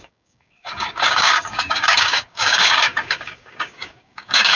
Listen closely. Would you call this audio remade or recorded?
remade